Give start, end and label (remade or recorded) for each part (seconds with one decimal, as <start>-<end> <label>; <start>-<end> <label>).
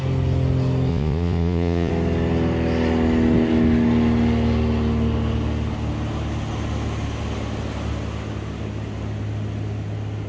0.0-0.9 recorded; 0.9-1.9 remade; 1.9-10.3 recorded